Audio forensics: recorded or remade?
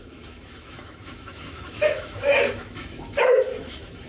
remade